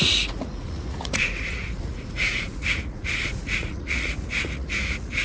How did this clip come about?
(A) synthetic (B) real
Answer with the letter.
A